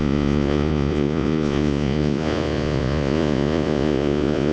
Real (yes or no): no